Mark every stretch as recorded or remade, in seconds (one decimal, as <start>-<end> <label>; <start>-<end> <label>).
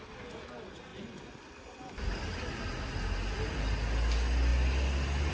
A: 0.0-5.3 recorded